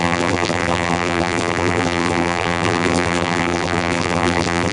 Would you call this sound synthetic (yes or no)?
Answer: yes